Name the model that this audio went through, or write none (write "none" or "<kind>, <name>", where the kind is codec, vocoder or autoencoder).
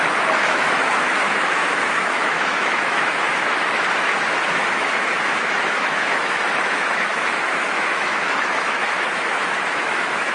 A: autoencoder, DAC-VAE